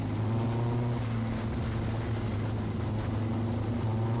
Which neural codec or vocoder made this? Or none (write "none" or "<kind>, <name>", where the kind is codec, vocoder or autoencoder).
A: none